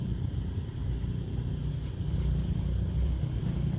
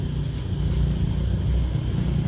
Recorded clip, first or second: second